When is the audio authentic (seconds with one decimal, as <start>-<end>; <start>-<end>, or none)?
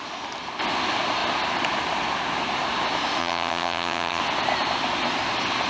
0.0-3.2; 4.2-5.7